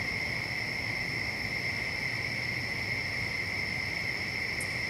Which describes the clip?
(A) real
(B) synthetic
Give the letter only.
A